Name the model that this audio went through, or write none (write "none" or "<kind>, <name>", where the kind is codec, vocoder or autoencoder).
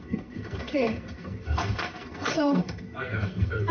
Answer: codec, SNAC